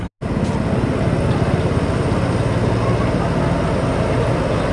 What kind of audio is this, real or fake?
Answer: real